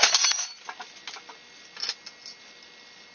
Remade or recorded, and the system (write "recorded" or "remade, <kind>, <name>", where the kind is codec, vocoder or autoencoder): recorded